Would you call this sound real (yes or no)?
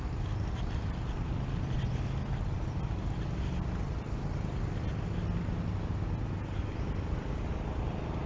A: yes